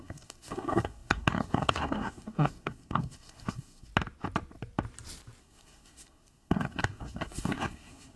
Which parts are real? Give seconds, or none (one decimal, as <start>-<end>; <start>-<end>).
3.9-5.4